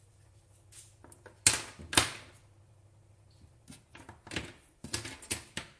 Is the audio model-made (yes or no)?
no